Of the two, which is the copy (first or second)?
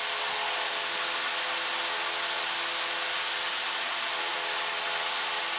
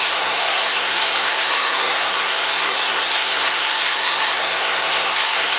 second